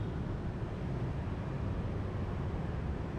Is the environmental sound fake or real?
real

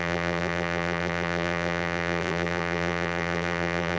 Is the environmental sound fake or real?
fake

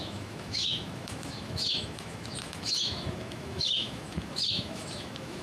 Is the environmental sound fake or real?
fake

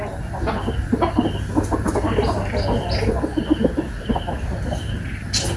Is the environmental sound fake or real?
real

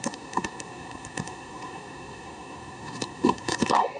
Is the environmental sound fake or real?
fake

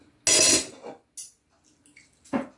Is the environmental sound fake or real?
real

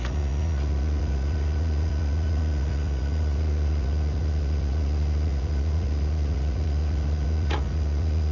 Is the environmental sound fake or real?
fake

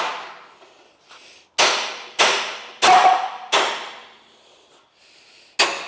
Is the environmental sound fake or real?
real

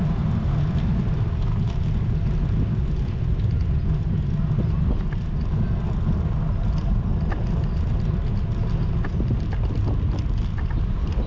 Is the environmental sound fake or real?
real